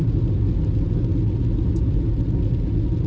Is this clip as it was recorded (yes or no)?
yes